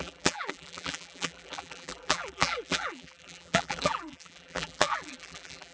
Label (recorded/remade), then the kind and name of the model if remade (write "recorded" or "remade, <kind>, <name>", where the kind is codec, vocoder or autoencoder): remade, vocoder, BigVGAN v2